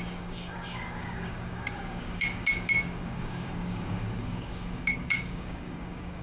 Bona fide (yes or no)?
no